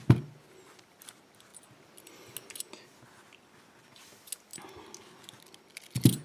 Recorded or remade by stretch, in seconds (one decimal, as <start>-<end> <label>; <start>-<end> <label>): 0.0-6.2 recorded